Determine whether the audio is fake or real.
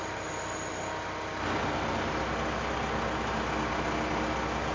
real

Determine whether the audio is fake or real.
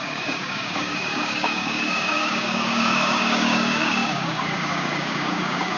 fake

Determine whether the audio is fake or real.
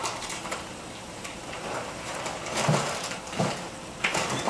fake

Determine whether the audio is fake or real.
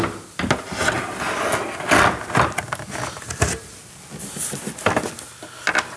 real